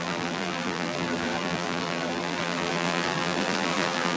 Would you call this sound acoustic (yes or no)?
no